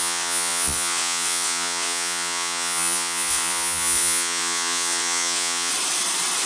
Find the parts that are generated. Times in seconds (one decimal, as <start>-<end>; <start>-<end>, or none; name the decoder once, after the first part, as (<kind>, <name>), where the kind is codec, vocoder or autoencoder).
0.0-5.7 (vocoder, Vocos)